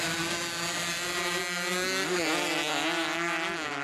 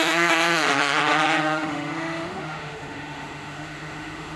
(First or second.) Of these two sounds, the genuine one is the first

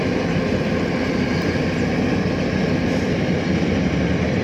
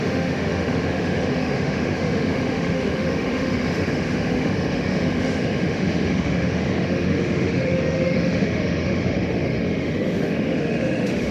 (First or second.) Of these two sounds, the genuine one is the first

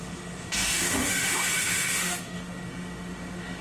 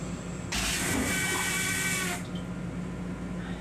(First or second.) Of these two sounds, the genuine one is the second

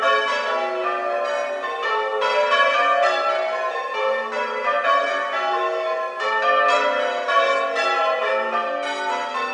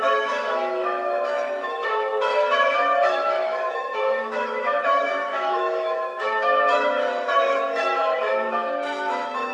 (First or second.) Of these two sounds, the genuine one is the first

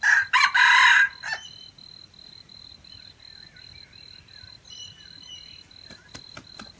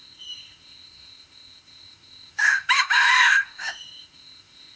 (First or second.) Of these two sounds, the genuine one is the first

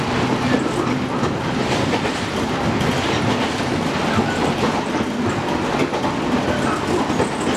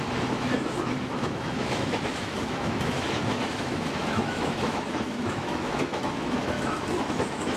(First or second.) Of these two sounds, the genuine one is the first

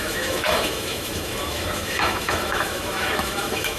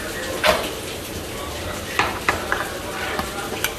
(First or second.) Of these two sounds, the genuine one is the second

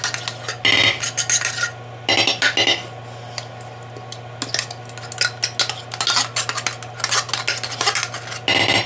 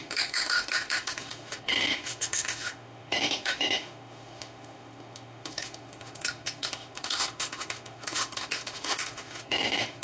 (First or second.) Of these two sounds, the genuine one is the first